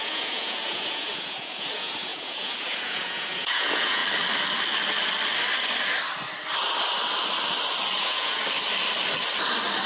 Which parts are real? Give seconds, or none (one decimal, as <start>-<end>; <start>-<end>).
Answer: 4.0-8.0; 8.4-9.9